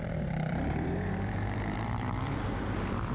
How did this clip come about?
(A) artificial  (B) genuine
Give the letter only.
A